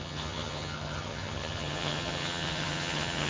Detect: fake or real fake